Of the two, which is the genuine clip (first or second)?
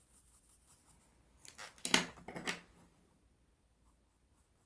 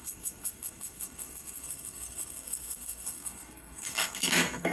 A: first